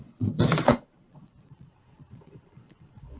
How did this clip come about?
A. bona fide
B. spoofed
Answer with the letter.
B